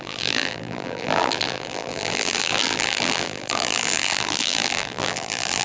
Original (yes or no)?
no